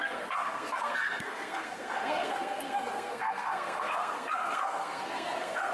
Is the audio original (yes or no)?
no